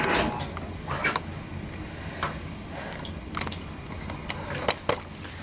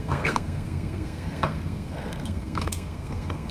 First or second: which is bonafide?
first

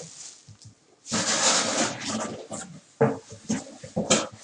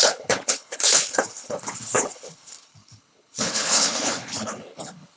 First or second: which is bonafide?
first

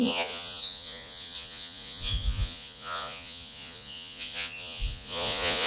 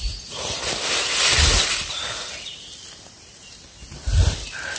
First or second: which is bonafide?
second